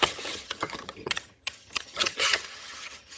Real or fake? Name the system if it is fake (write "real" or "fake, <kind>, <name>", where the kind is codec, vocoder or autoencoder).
fake, vocoder, HiFi-GAN